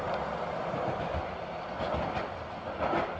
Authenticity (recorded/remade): recorded